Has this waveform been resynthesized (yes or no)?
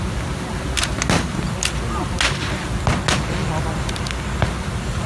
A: no